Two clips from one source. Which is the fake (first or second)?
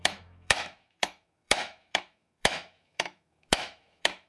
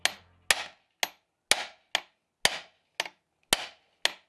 first